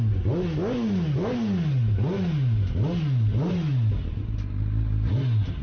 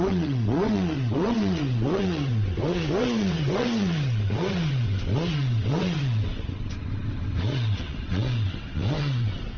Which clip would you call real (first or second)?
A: first